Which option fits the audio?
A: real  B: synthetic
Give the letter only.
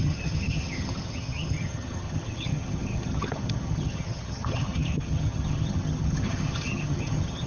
B